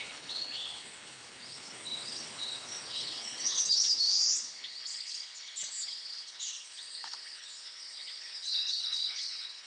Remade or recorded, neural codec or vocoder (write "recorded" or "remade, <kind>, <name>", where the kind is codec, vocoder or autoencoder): remade, codec, HILCodec